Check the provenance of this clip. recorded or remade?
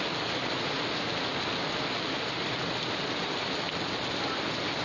recorded